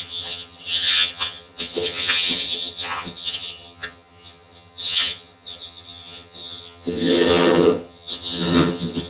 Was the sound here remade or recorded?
remade